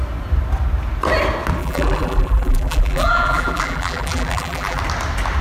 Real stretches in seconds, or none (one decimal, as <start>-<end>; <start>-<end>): 0.0-1.6; 4.8-5.4